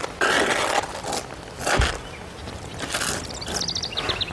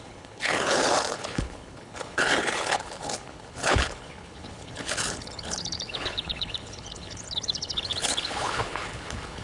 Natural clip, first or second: first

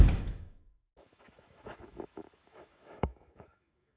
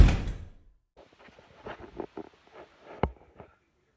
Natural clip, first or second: second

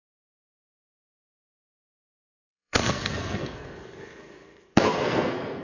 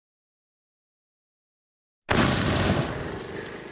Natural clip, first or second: second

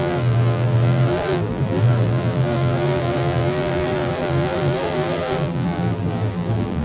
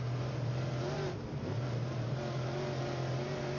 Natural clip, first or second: second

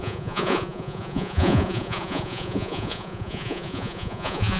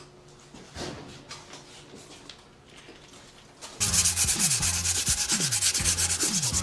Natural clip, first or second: second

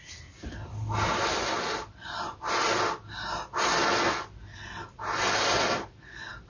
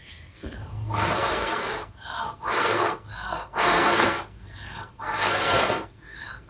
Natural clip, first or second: first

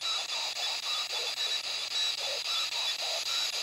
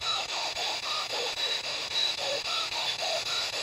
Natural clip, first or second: first